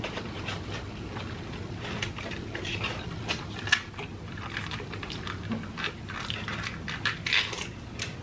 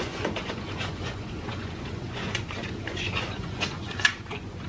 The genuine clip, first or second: first